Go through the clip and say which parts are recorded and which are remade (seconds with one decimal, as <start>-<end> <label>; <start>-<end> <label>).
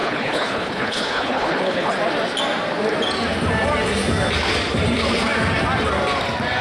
0.0-1.9 remade; 1.9-6.6 recorded